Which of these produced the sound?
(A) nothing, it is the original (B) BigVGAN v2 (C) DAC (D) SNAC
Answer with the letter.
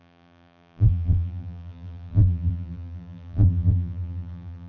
B